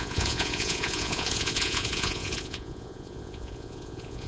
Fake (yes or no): yes